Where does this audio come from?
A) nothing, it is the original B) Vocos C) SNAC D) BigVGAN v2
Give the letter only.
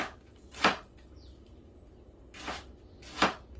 A